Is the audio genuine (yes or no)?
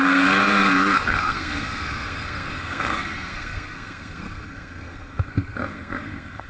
no